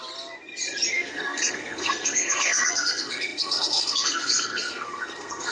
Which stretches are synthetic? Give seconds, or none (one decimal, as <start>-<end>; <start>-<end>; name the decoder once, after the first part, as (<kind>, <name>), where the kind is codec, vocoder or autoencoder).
0.9-5.5 (codec, SNAC)

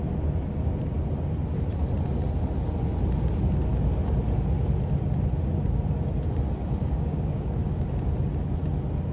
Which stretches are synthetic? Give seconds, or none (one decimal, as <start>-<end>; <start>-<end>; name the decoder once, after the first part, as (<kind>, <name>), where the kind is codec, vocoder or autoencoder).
6.8-7.6 (codec, DAC)

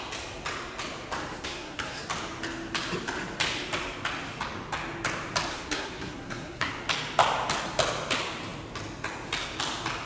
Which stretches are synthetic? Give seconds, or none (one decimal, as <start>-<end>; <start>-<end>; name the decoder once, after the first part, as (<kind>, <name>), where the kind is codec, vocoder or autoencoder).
1.3-2.0 (codec, SNAC); 5.5-6.7